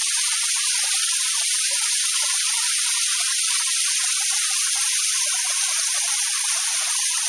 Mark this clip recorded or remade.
recorded